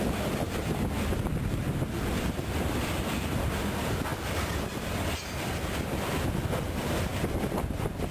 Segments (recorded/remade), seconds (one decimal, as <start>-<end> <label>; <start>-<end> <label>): 0.0-8.1 recorded